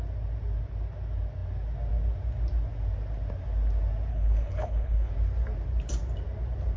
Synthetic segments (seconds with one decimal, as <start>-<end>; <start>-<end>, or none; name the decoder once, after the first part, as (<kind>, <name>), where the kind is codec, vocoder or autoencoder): 4.1-5.1 (codec, HILCodec)